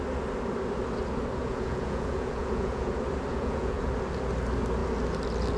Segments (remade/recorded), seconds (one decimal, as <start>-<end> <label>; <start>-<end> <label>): 0.0-1.4 recorded; 1.4-2.9 remade; 2.9-3.3 recorded; 3.3-3.9 remade; 3.9-5.6 recorded